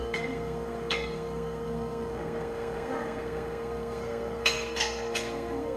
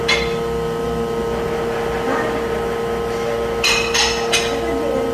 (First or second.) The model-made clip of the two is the first